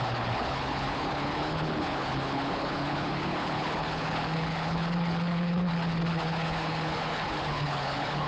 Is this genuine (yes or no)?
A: no